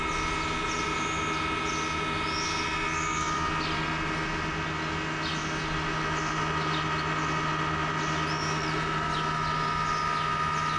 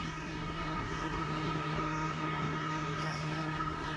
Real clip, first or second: first